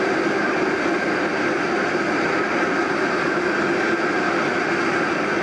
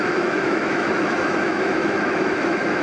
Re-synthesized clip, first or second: second